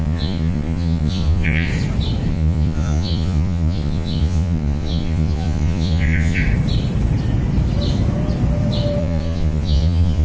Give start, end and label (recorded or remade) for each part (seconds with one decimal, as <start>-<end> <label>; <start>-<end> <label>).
0.0-1.7 remade; 1.7-2.3 recorded; 2.3-6.4 remade; 6.4-9.0 recorded; 9.0-10.2 remade